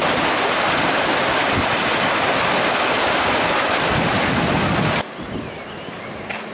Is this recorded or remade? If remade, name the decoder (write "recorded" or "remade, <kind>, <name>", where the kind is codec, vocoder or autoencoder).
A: recorded